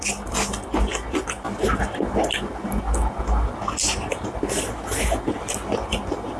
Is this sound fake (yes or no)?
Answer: no